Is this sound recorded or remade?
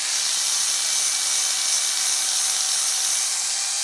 recorded